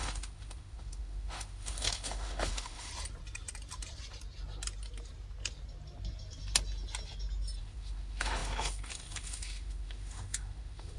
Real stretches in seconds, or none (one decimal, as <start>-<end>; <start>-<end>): 2.9-7.6